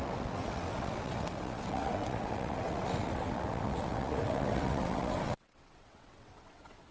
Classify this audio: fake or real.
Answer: fake